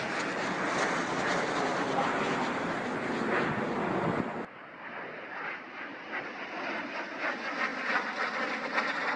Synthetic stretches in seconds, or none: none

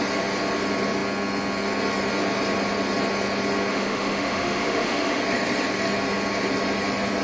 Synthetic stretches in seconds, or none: 3.7-5.2 (autoencoder, DAC-VAE)

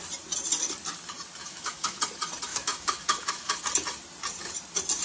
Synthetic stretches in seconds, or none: 1.4-2.0 (autoencoder, DAC-VAE); 2.5-3.6

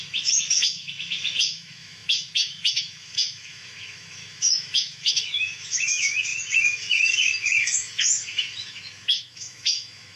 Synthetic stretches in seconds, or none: 0.0-10.2 (autoencoder, DAC-VAE)

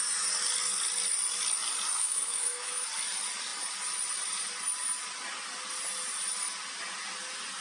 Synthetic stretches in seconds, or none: 2.0-2.9 (autoencoder, DAC-VAE)

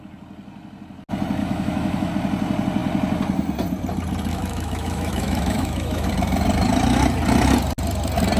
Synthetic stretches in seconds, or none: 1.4-2.1 (autoencoder, DAC-VAE); 4.3-6.1